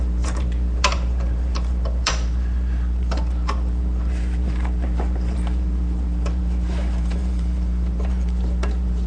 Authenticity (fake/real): fake